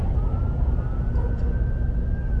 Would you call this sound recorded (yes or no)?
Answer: yes